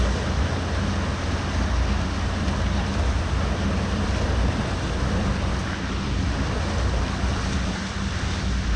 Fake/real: real